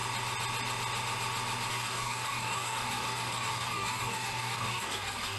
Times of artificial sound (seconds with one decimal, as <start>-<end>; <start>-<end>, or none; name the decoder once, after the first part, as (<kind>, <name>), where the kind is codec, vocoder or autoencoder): 1.7-5.4 (codec, DAC)